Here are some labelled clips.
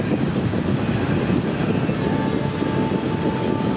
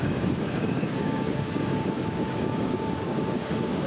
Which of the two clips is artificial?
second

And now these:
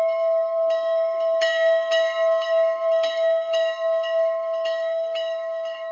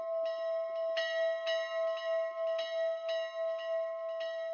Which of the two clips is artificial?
first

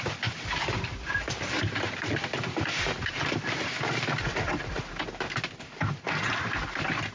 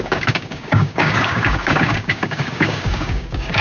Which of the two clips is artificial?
second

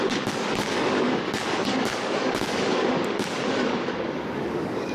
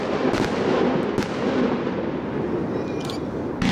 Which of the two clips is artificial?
first